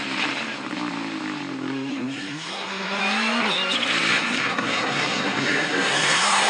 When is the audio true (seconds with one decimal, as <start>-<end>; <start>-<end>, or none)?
0.0-1.9; 3.0-4.1